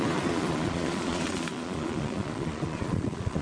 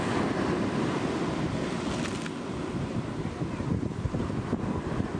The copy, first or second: first